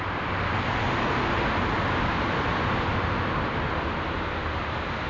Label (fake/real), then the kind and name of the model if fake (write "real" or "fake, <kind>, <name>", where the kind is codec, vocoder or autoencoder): real